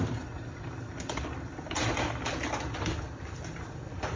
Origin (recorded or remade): remade